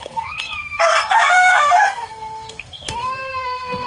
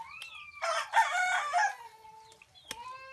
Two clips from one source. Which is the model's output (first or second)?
first